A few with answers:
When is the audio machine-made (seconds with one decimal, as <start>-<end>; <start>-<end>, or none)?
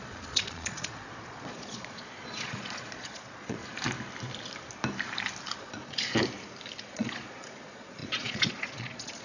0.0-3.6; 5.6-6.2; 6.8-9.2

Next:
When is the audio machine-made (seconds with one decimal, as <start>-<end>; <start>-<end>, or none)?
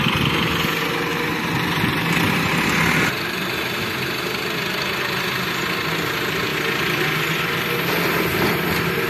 none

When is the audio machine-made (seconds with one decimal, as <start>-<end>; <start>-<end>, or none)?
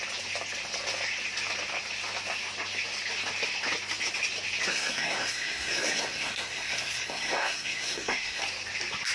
4.7-8.4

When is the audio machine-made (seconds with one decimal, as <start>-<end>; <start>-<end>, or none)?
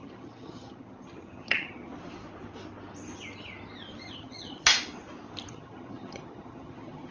0.0-1.9; 4.1-4.7; 5.5-7.1